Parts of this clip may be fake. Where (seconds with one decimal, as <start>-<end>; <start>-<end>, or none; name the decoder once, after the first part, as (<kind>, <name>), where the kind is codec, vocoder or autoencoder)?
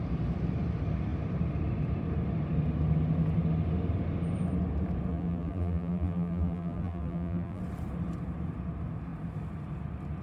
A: 5.1-7.6 (vocoder, BigVGAN v2)